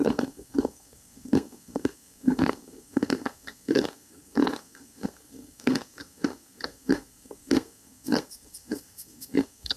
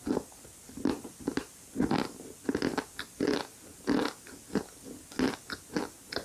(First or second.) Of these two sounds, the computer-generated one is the first